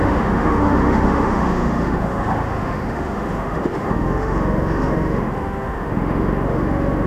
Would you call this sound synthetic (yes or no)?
yes